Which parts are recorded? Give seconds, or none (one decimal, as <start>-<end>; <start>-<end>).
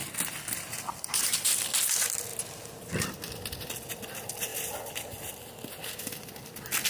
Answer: 0.0-6.9